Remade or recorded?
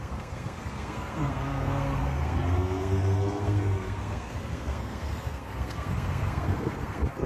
remade